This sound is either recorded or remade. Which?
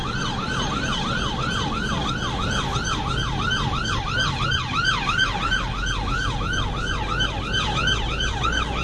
recorded